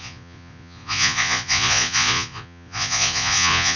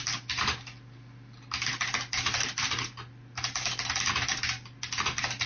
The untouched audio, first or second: second